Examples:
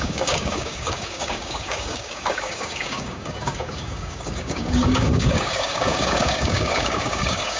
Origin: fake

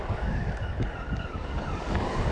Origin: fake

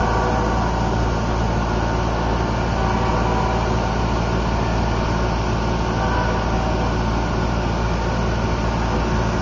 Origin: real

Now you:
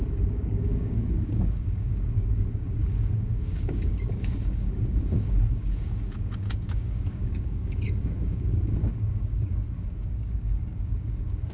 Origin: fake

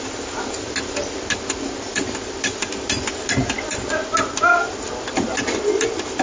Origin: real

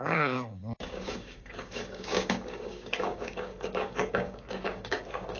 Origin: fake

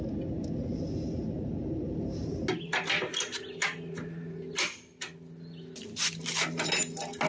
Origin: real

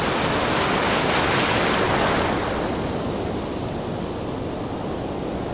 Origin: real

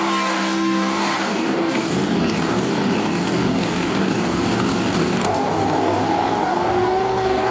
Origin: fake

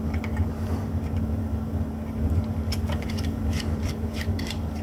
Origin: fake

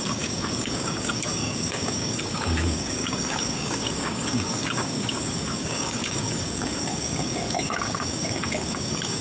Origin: fake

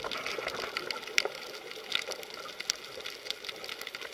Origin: real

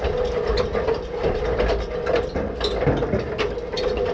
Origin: real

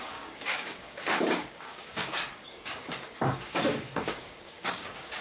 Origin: fake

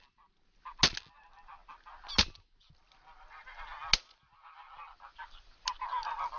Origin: real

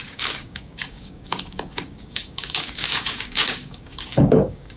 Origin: fake